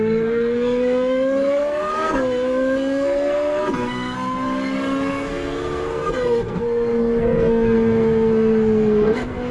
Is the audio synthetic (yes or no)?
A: yes